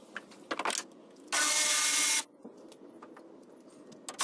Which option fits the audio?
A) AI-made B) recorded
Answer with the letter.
B